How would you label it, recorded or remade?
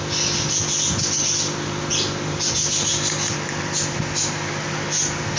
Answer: recorded